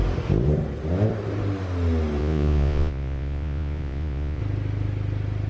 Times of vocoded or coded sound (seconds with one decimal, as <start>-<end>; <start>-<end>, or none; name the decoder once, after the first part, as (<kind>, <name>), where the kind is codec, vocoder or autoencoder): 2.2-4.4 (vocoder, Vocos)